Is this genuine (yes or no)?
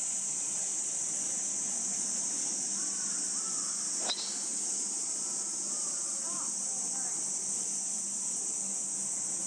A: yes